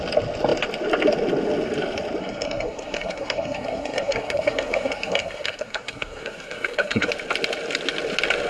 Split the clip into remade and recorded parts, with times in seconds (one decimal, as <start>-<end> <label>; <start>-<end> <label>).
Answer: 0.0-2.2 recorded; 2.2-7.1 remade; 7.1-8.5 recorded